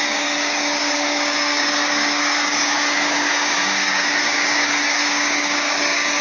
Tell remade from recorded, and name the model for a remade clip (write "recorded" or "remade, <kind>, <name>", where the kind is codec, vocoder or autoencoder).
remade, codec, DAC